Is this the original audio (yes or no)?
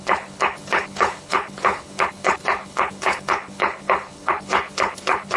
no